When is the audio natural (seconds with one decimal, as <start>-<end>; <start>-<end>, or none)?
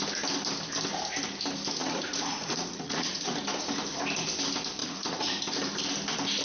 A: 0.0-1.8; 3.3-4.8; 5.4-6.4